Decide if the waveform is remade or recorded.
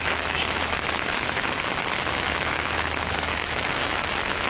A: remade